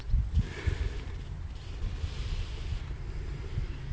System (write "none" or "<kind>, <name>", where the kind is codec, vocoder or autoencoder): none